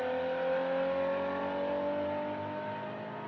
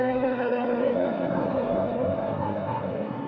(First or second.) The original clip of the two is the first